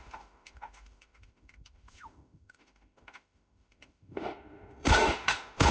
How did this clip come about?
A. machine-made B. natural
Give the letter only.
A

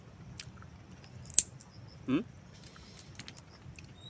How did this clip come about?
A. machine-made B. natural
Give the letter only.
B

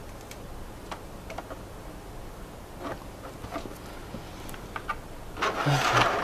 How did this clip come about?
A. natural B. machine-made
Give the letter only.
A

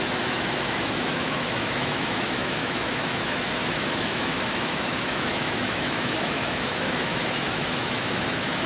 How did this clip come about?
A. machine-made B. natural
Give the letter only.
A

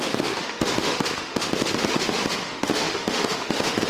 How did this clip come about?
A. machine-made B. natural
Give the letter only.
A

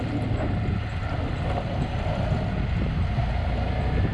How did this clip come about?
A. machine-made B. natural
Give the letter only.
B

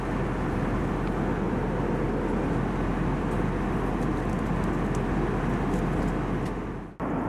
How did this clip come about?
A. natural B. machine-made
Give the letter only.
A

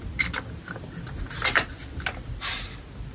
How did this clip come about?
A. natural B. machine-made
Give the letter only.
A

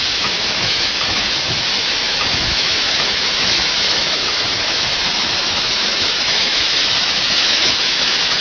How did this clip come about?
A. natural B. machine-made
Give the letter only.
B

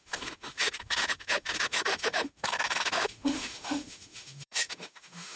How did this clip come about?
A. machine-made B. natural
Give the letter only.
A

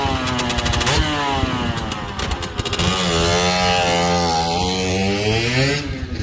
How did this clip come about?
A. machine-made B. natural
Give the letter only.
B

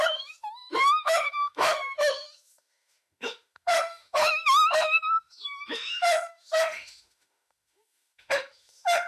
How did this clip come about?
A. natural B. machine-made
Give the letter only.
B